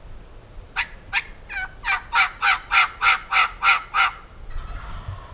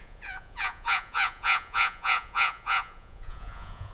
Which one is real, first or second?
first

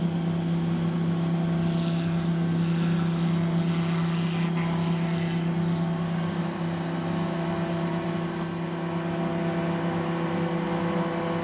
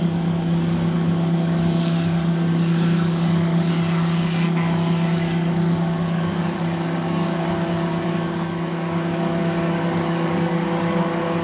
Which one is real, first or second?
first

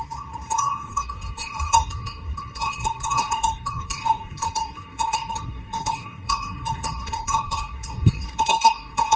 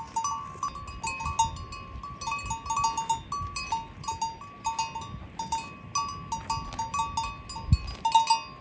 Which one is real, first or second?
second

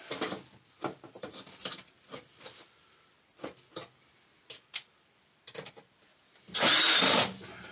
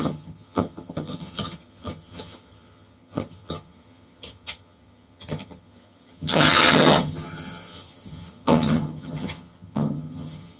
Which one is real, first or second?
first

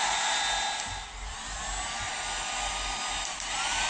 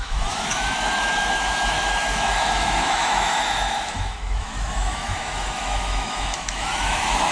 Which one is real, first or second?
first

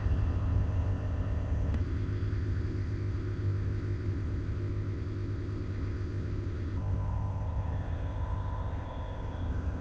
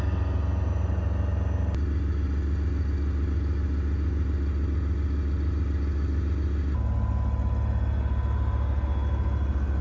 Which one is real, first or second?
second